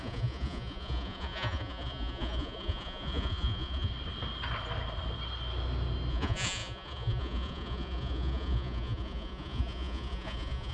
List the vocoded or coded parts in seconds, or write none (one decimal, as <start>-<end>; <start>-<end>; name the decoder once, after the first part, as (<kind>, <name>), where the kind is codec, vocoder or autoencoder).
0.0-3.9 (vocoder, Vocos); 6.1-10.7